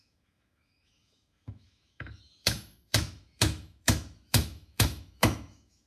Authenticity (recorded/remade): remade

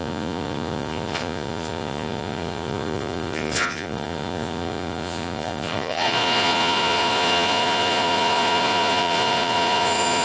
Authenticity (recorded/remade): remade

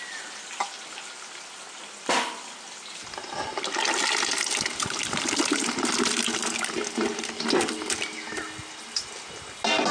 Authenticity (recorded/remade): recorded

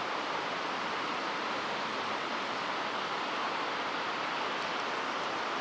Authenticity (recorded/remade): recorded